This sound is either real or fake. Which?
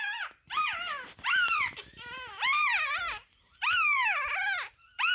fake